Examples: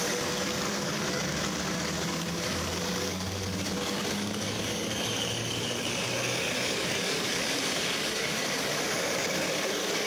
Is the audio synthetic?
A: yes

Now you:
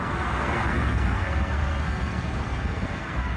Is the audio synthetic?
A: yes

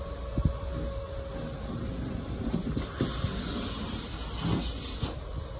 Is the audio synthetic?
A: no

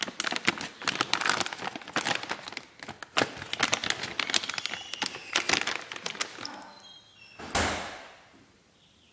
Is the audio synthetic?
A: no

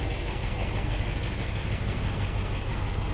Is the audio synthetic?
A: yes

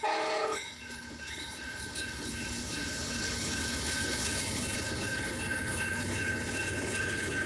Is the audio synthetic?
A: yes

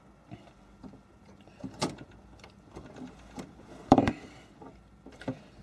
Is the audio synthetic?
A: yes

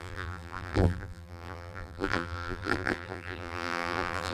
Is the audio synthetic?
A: yes